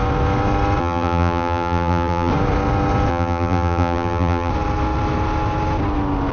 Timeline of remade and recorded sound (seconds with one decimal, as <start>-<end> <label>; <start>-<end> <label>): 0.0-0.8 recorded; 0.8-2.3 remade; 2.3-3.1 recorded; 3.1-4.5 remade; 4.5-6.3 recorded